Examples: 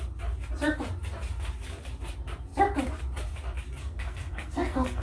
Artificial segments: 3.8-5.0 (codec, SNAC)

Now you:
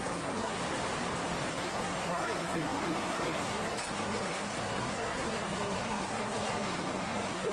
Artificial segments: 0.0-0.6 (codec, SNAC); 1.5-7.5

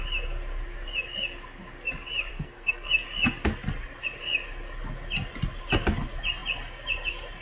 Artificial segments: 2.3-2.9 (codec, SNAC)

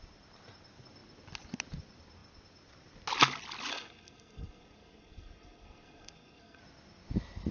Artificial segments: 3.7-6.6 (codec, SNAC)

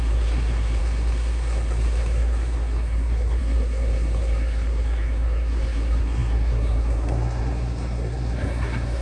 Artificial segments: 0.0-9.0 (codec, SNAC)

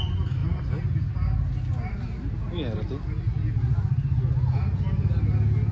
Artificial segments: none

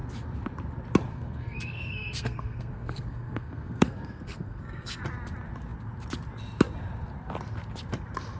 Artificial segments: 1.1-5.0 (codec, SNAC)

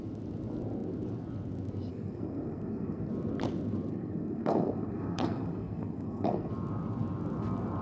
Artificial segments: 1.9-3.1 (codec, SNAC); 3.9-6.5